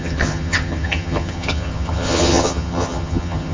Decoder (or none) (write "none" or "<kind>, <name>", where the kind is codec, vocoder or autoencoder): vocoder, HiFi-GAN